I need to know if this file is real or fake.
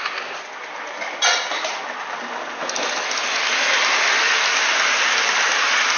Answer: real